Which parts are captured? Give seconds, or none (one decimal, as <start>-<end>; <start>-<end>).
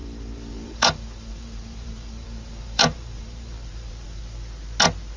4.2-5.2